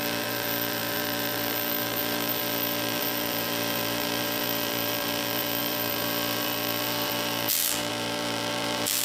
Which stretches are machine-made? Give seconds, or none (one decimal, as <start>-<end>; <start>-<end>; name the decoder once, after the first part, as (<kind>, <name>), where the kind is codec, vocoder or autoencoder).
0.0-9.0 (vocoder, BigVGAN v2)